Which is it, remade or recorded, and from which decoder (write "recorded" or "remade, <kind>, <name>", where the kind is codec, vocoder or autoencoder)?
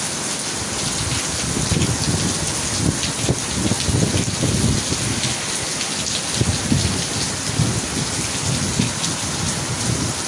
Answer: recorded